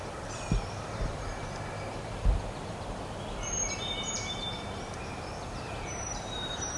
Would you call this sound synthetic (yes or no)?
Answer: yes